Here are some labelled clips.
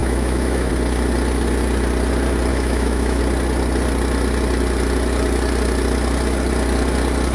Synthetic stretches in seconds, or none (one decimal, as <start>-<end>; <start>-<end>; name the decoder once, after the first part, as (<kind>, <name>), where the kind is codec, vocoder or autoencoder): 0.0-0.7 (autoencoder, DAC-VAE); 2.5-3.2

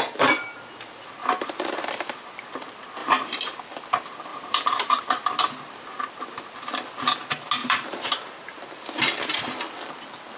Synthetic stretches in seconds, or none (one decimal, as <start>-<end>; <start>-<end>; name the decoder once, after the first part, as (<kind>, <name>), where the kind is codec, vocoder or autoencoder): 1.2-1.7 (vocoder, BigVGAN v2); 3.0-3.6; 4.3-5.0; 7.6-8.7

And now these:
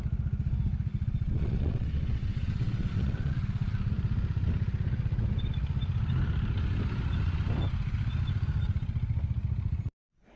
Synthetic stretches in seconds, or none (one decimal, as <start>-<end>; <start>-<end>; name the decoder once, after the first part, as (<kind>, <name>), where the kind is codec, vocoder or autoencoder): 0.9-3.9 (vocoder, WaveNeXt)

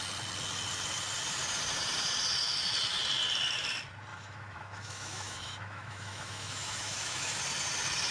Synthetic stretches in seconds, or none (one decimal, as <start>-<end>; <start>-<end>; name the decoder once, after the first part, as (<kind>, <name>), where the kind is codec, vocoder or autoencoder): 4.1-7.4 (autoencoder, DAC-VAE)

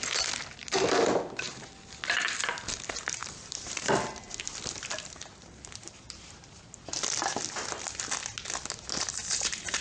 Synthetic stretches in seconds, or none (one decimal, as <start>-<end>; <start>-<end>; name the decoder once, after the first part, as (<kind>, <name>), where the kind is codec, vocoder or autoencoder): 3.2-7.7 (vocoder, BigVGAN v2)

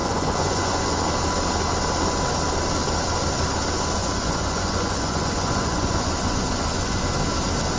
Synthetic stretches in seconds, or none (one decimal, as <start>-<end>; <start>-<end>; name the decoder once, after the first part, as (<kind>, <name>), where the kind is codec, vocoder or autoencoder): 0.0-1.0 (vocoder, Vocos); 4.0-7.0

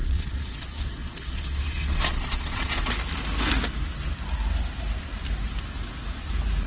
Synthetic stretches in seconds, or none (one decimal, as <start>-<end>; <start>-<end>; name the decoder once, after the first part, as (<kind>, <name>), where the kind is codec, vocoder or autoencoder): 0.0-2.9 (vocoder, Vocos)